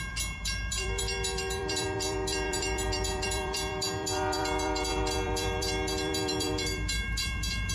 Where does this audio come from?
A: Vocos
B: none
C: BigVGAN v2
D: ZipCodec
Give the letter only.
C